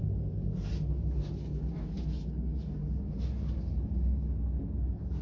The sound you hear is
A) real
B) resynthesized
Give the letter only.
A